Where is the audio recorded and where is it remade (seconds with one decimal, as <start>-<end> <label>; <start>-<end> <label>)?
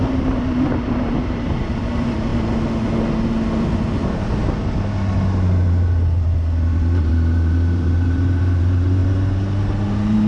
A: 0.0-2.3 remade; 2.3-7.1 recorded; 7.1-9.0 remade; 9.0-9.9 recorded; 9.9-10.3 remade